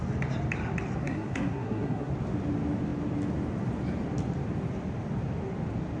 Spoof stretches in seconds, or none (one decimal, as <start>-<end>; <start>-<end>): 1.0-2.1